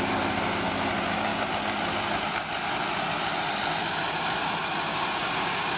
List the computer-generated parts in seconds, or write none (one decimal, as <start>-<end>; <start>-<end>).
4.9-5.8